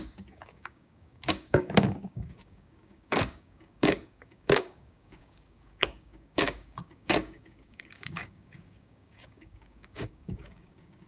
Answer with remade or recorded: remade